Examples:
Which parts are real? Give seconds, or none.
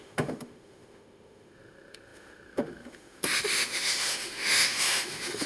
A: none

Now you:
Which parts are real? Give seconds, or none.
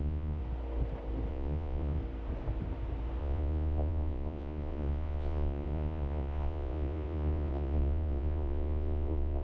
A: 0.4-1.3; 2.0-3.2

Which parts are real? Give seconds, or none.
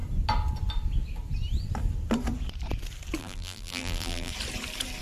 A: 0.0-3.2; 4.3-5.0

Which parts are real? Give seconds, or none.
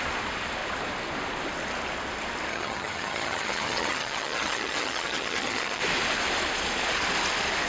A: 0.0-2.5; 5.8-7.7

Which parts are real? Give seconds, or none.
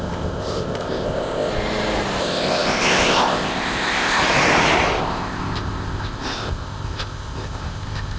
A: 1.5-2.2; 4.2-5.0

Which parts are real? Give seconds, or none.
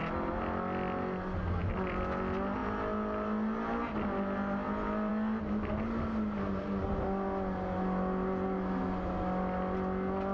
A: 0.0-10.3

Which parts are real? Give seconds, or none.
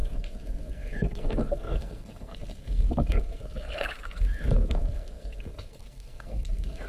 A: none